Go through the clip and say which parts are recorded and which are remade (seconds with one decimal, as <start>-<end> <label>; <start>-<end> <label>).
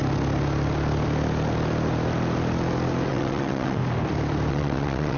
0.0-3.1 recorded; 3.1-3.8 remade; 3.8-4.5 recorded; 4.5-5.2 remade